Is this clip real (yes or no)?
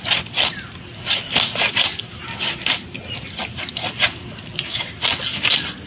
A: yes